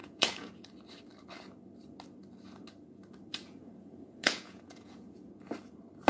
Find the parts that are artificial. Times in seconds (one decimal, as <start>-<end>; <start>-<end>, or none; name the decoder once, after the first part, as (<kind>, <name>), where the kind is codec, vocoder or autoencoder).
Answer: 0.0-0.5 (vocoder, Vocos); 3.3-5.3

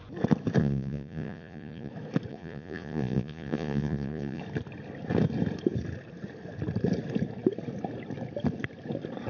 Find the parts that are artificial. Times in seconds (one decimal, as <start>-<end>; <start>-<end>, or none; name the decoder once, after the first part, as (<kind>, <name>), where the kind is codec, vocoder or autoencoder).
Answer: 0.6-1.9 (vocoder, Vocos); 2.3-4.4

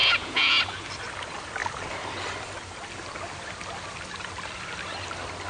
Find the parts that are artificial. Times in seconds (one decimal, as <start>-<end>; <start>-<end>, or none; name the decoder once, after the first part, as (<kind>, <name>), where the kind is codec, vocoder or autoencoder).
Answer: 0.0-0.5 (vocoder, Vocos)

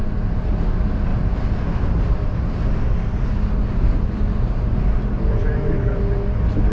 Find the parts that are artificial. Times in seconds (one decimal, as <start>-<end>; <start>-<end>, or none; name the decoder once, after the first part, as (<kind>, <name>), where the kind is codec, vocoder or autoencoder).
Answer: none

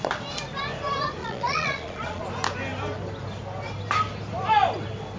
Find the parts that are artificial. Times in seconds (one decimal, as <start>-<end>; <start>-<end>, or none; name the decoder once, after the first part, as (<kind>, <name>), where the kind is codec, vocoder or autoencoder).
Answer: 1.2-2.2 (vocoder, Vocos)

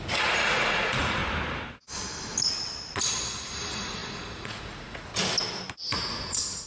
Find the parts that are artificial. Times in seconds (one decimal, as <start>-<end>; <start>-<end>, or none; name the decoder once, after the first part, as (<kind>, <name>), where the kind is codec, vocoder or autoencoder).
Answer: 0.0-1.2 (vocoder, Vocos); 3.3-5.1; 5.7-6.7

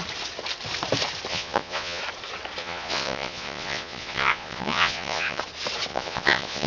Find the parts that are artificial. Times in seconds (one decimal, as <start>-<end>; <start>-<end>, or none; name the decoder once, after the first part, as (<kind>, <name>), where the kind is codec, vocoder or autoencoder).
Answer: 1.3-2.0 (vocoder, Vocos); 2.6-5.4; 5.9-6.7